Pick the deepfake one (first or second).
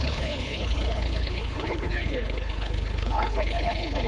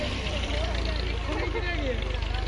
first